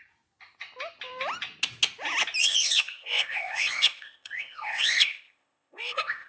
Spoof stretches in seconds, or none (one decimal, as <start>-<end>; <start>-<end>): 2.4-6.3